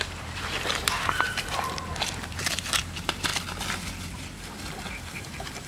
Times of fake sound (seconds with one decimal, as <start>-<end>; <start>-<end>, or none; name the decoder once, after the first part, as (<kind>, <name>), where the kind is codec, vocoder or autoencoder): 0.0-3.3 (vocoder, BigVGAN v2); 5.2-5.7